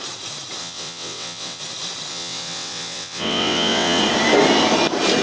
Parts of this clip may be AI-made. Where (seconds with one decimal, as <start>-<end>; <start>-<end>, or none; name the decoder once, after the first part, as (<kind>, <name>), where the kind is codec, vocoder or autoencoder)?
0.6-1.6 (vocoder, WaveNeXt); 2.1-4.0

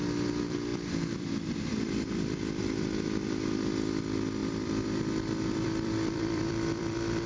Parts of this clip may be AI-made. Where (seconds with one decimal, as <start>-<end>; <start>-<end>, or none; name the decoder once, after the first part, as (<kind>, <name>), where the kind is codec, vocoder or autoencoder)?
0.7-2.6 (vocoder, BigVGAN v2); 4.4-7.3

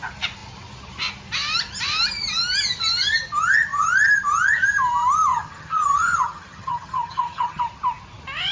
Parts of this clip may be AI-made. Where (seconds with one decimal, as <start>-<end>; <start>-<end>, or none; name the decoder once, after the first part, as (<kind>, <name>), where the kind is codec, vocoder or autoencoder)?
5.3-7.6 (vocoder, HiFi-GAN)

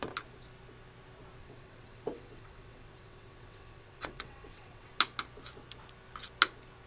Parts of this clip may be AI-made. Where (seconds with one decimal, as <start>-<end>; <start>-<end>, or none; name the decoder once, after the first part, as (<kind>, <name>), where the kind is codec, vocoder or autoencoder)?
1.4-4.9 (vocoder, WaveNeXt)